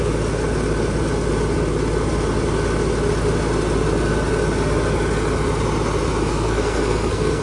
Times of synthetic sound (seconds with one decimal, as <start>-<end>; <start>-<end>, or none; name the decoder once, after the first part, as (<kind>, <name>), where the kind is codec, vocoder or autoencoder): 6.3-7.4 (codec, SNAC)